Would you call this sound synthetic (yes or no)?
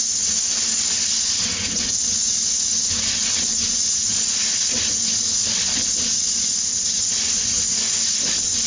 no